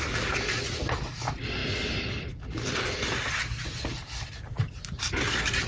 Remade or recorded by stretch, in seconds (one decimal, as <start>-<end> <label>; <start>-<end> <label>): 0.0-5.7 recorded